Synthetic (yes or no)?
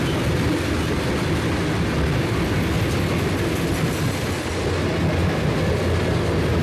no